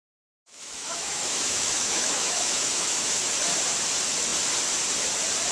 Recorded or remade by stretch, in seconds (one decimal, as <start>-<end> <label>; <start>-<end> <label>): 0.0-3.3 remade; 3.3-5.5 recorded